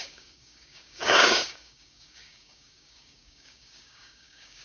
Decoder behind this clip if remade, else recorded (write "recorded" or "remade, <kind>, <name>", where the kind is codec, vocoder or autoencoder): remade, codec, DAC